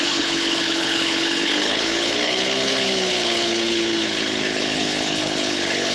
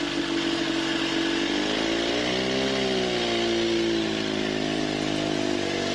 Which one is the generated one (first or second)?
first